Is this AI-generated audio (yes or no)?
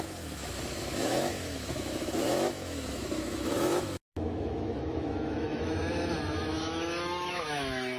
yes